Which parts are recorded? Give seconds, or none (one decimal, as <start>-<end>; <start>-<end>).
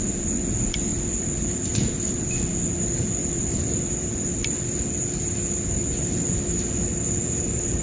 0.0-0.9; 4.8-7.8